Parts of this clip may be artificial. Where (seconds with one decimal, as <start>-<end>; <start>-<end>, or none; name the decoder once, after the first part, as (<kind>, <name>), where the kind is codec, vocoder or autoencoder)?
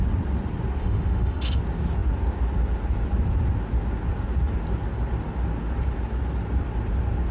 0.8-1.6 (autoencoder, DAC-VAE)